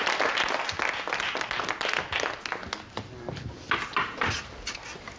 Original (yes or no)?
yes